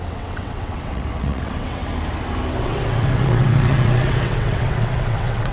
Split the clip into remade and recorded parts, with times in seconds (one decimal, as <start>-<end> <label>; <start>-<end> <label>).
0.0-1.8 remade; 1.8-2.6 recorded; 2.6-5.5 remade